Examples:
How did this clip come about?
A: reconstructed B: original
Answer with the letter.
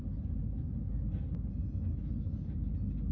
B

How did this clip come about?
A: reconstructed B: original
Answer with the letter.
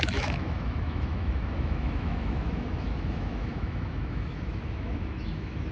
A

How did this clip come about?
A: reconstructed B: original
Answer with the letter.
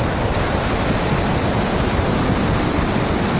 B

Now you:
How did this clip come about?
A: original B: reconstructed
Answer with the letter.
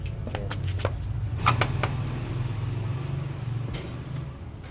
A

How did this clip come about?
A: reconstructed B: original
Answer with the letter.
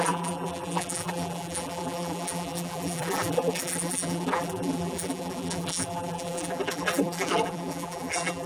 A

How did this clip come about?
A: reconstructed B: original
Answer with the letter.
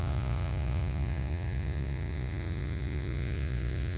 A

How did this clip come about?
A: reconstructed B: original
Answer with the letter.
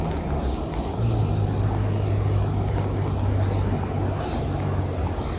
B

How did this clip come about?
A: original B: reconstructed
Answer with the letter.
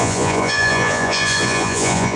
B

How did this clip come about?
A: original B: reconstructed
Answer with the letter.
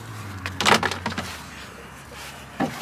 A